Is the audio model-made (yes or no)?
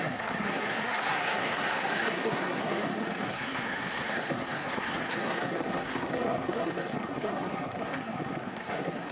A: yes